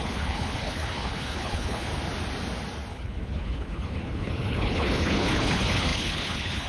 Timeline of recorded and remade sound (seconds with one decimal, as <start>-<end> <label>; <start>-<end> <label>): 0.0-1.9 remade; 1.9-2.9 recorded; 2.9-6.7 remade